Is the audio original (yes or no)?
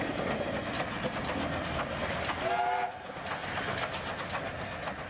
yes